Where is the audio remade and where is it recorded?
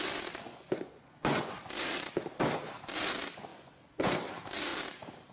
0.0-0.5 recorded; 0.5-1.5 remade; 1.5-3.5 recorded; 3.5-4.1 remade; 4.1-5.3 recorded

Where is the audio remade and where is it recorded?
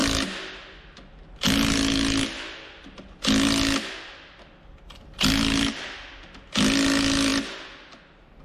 0.0-8.4 recorded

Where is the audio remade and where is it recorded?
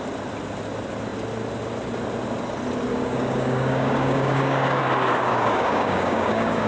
0.0-2.9 recorded; 2.9-4.8 remade; 4.8-5.3 recorded; 5.3-6.7 remade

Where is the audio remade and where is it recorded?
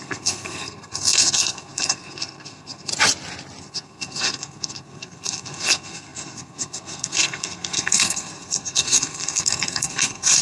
0.0-2.9 remade; 2.9-3.6 recorded; 3.6-10.4 remade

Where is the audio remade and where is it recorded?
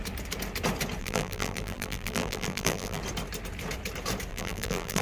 0.0-1.0 recorded; 1.0-3.0 remade; 3.0-4.3 recorded; 4.3-5.0 remade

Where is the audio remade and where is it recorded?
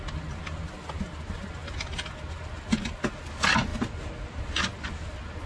0.0-5.5 recorded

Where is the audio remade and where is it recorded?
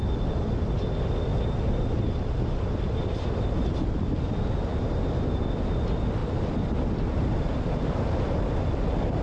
0.0-1.3 recorded; 1.3-4.0 remade; 4.0-6.2 recorded; 6.2-7.5 remade; 7.5-9.2 recorded